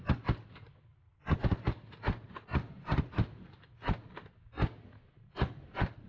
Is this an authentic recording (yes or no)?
yes